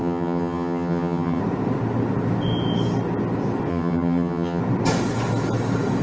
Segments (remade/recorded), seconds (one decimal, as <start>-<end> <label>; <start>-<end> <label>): 0.0-1.4 remade; 1.4-3.7 recorded; 3.7-4.6 remade; 4.6-6.0 recorded